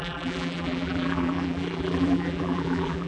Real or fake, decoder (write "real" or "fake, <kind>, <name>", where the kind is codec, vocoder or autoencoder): fake, vocoder, BigVGAN v2